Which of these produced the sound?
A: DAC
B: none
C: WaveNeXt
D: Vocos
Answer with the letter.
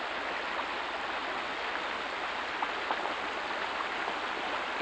B